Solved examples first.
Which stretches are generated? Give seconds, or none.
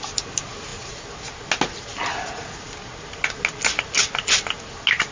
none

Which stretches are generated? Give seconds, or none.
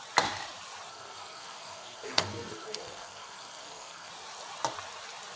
0.9-4.1 (codec, SNAC)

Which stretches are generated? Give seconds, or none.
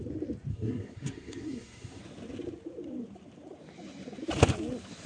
0.5-2.0 (codec, SNAC)